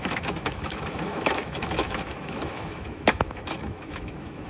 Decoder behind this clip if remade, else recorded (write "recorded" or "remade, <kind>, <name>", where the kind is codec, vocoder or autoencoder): remade, autoencoder, DAC-VAE